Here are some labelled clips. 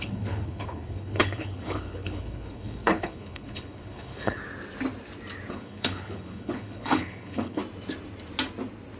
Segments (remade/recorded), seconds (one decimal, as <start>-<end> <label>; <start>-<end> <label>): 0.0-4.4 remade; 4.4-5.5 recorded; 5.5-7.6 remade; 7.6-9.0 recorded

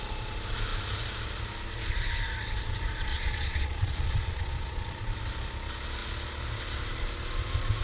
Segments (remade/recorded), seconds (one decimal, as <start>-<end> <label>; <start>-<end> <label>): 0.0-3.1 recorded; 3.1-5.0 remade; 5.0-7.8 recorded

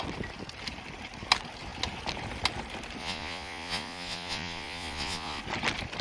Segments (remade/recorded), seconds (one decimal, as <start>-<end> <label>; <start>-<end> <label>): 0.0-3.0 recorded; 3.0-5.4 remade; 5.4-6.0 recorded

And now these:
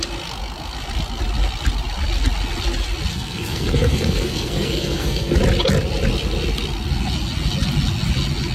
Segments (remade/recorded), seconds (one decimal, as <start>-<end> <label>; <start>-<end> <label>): 0.0-3.1 recorded; 3.1-5.4 remade; 5.4-8.5 recorded

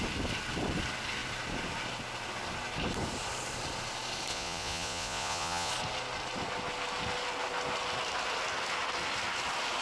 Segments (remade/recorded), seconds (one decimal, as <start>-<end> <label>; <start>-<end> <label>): 0.0-4.3 recorded; 4.3-5.7 remade; 5.7-9.8 recorded

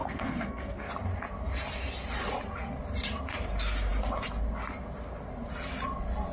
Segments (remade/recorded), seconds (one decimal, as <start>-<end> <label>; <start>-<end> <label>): 0.0-0.9 remade; 0.9-6.3 recorded

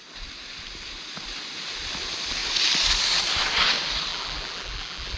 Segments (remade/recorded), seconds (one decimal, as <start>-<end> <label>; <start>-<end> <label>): 0.0-4.1 recorded; 4.1-5.2 remade